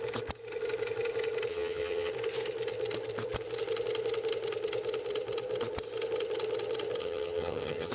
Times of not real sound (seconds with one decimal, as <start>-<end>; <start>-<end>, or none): 1.5-2.1; 7.0-7.9